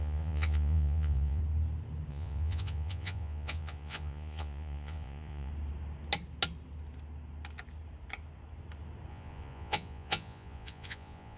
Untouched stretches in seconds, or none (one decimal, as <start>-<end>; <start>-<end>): 1.4-2.1; 5.5-9.1